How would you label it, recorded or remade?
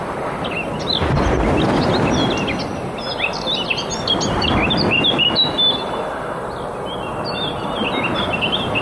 recorded